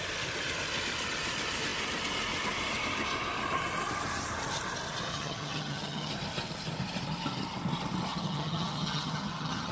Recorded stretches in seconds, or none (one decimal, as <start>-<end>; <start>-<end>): 0.0-5.1; 6.1-8.1